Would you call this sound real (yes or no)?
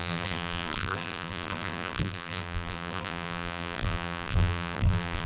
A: no